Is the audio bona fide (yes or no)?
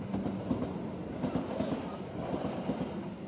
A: yes